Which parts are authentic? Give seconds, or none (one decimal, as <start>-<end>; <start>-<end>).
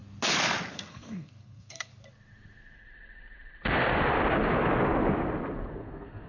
0.0-0.7; 1.9-5.7